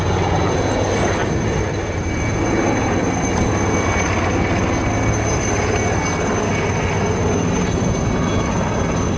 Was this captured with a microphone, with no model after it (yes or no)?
yes